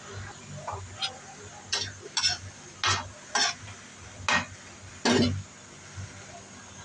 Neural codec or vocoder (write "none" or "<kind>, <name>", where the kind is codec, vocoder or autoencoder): none